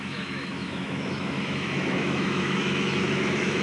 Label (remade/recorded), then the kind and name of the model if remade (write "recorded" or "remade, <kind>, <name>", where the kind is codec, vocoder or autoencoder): remade, autoencoder, DAC-VAE